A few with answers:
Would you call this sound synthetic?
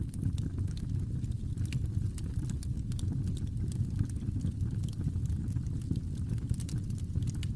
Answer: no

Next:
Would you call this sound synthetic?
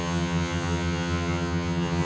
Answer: yes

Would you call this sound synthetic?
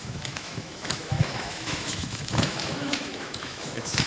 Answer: yes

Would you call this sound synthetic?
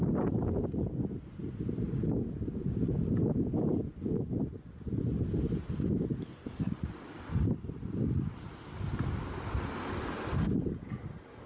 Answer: no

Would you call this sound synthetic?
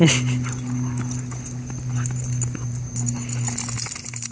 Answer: no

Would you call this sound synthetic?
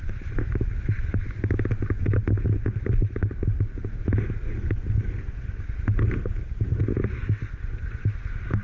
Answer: no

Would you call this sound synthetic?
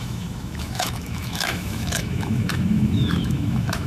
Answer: yes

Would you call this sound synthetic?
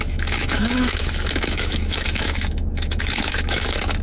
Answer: yes